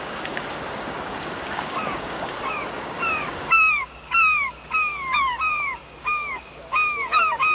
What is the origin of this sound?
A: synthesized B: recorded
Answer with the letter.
A